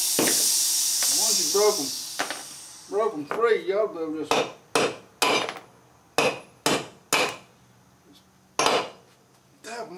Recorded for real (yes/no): yes